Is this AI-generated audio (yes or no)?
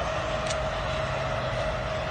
no